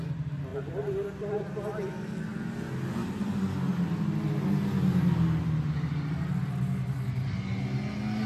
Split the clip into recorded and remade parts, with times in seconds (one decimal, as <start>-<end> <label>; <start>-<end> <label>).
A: 0.0-0.5 recorded; 0.5-1.4 remade; 1.4-8.3 recorded